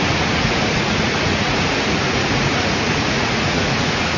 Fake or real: fake